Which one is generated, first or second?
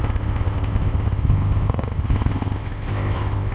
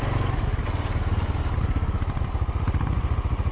first